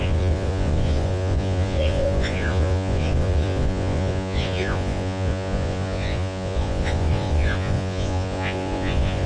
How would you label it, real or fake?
fake